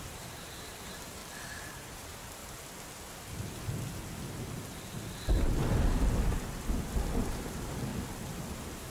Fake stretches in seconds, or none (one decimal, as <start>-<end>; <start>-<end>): 0.0-1.2; 1.7-2.4; 7.3-7.9; 8.5-8.9